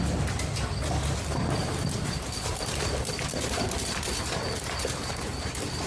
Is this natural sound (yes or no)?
yes